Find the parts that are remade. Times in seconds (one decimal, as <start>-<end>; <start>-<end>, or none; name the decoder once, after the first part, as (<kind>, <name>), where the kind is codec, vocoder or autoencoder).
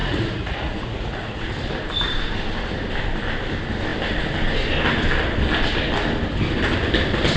0.0-1.5 (vocoder, Vocos)